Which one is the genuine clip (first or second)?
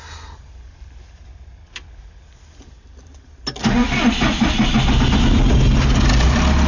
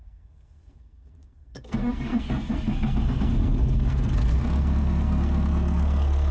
first